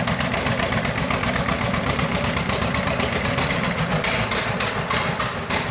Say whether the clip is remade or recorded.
remade